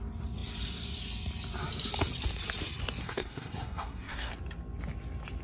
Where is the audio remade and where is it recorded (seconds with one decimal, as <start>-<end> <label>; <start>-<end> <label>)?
0.0-3.0 recorded; 3.0-4.3 remade; 4.3-5.4 recorded